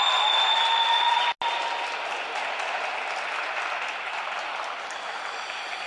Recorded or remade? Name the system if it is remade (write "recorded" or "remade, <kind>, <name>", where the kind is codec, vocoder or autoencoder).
recorded